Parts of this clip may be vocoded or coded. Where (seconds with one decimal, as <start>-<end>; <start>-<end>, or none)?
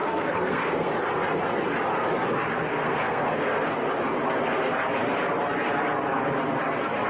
0.0-0.9; 2.7-3.7